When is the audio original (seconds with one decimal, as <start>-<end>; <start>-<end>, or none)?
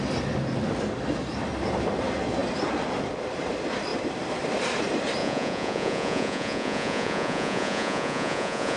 0.0-5.2